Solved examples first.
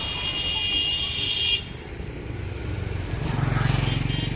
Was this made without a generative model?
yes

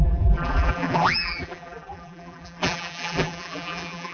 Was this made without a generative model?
no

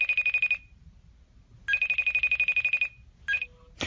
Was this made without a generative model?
yes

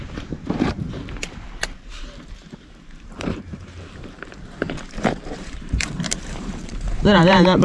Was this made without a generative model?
no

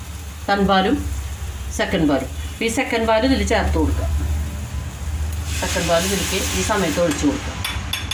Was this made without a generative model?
yes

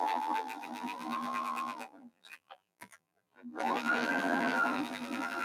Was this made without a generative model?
no